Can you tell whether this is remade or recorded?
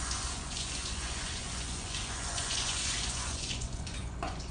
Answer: remade